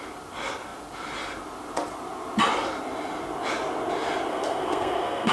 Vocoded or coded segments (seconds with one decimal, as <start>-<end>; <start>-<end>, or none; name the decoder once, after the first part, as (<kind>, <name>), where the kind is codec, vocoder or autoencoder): 4.3-5.3 (codec, SNAC)